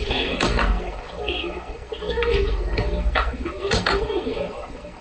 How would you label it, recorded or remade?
remade